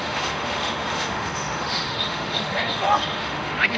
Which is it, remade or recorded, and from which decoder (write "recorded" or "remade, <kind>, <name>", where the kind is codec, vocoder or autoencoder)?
remade, autoencoder, DAC-VAE